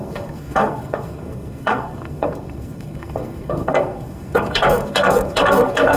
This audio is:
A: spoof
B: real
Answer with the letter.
A